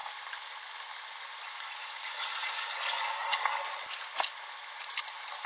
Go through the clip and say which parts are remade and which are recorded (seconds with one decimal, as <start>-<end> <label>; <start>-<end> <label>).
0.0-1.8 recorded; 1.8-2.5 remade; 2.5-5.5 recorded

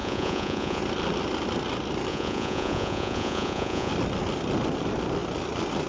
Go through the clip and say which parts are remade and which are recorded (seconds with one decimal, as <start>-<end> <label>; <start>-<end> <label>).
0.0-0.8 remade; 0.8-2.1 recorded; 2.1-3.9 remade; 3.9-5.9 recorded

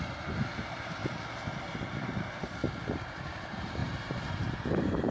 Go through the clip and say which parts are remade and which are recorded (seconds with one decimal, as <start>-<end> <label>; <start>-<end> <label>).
0.0-1.0 remade; 1.0-1.6 recorded; 1.6-2.6 remade; 2.6-3.4 recorded; 3.4-5.1 remade

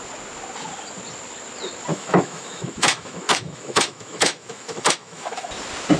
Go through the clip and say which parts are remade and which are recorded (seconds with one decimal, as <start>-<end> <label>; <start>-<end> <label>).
0.0-1.9 recorded; 1.9-5.5 remade; 5.5-6.0 recorded

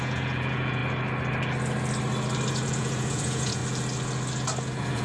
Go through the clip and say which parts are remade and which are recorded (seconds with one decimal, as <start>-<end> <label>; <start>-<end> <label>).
0.0-0.8 remade; 0.8-2.5 recorded; 2.5-3.6 remade; 3.6-4.6 recorded; 4.6-5.0 remade